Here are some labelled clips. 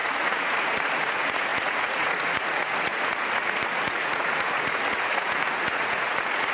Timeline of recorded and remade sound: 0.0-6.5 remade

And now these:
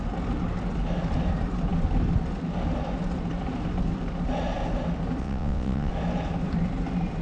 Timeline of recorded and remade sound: 0.0-5.2 recorded; 5.2-5.9 remade; 5.9-7.2 recorded

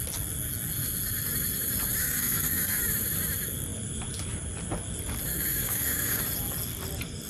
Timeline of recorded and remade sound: 0.0-2.0 recorded; 2.0-2.8 remade; 2.8-5.3 recorded; 5.3-6.2 remade; 6.2-7.3 recorded

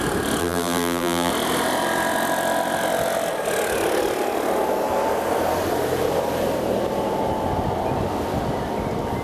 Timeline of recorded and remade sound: 0.0-0.4 recorded; 0.4-1.3 remade; 1.3-9.2 recorded

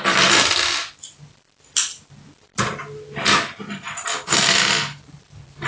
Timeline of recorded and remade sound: 0.0-2.5 remade; 2.5-4.2 recorded; 4.2-5.7 remade